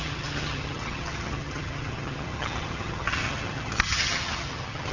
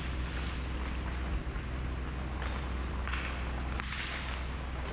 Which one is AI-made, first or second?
first